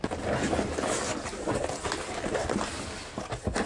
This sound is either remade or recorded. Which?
recorded